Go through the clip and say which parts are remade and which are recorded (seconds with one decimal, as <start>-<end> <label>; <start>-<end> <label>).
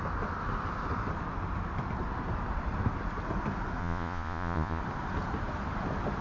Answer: 0.0-3.8 recorded; 3.8-4.8 remade; 4.8-6.2 recorded